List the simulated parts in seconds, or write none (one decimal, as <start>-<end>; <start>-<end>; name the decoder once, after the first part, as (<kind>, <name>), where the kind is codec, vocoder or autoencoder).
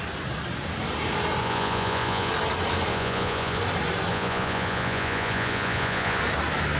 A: 1.4-2.3 (vocoder, Vocos); 2.9-3.6; 4.1-6.2